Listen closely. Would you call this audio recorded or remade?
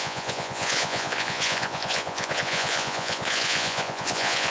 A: remade